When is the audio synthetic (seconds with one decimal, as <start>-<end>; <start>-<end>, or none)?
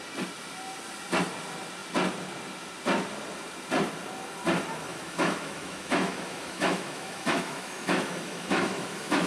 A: 4.9-9.3